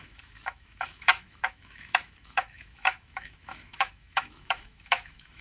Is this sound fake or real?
fake